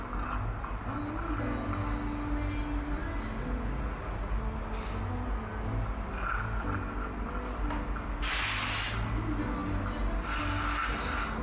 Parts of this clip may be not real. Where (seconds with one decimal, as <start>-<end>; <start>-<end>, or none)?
none